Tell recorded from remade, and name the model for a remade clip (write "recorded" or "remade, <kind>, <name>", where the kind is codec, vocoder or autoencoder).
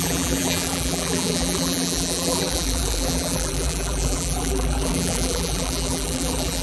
remade, vocoder, BigVGAN v2